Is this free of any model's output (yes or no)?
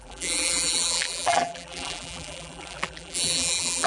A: no